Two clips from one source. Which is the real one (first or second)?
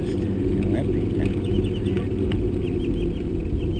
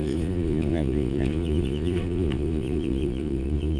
first